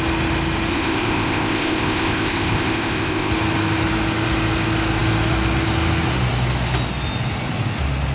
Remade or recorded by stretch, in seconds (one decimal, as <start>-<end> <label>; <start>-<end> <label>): 0.0-0.7 recorded; 0.7-3.3 remade; 3.3-8.1 recorded